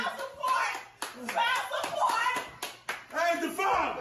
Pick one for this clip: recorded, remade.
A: recorded